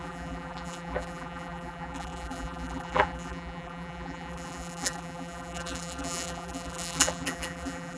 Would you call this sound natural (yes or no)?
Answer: no